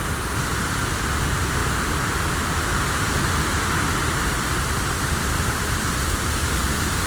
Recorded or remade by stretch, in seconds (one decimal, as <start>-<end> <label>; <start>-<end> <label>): 0.0-7.1 recorded